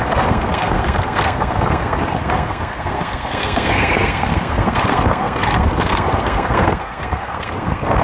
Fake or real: fake